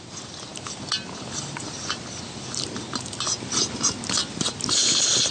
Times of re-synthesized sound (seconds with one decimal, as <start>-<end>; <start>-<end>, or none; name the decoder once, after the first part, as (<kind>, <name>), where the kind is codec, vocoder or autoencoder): none